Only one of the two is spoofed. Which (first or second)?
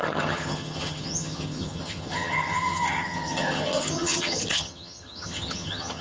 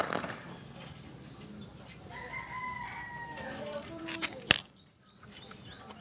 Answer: first